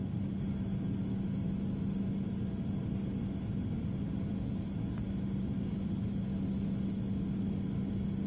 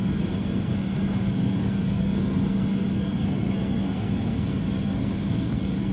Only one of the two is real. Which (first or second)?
first